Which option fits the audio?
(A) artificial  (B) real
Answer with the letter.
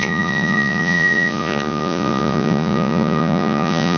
A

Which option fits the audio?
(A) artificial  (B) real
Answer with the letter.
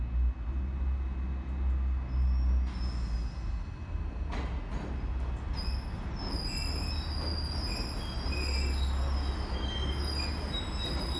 B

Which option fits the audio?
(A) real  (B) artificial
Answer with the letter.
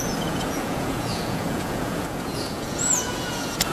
B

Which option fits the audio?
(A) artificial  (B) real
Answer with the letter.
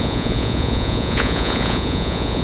A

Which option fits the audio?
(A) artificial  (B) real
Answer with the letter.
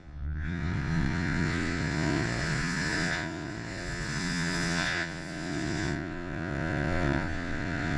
A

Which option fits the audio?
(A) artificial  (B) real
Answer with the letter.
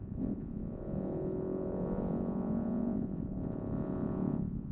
A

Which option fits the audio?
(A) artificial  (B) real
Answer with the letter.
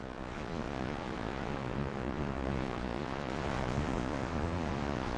A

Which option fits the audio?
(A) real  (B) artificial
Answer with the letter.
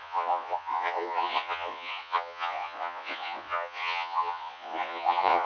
B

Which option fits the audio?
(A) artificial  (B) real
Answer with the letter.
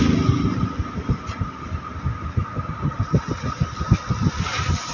B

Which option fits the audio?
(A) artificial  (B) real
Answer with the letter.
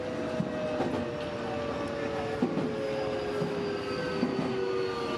B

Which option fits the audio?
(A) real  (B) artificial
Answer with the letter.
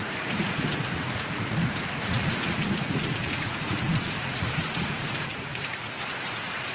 B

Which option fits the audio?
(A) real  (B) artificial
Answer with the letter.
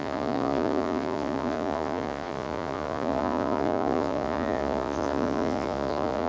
B